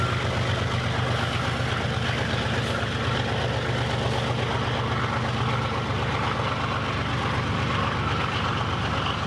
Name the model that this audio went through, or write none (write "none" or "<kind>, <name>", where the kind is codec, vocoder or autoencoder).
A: none